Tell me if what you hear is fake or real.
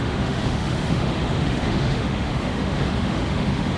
fake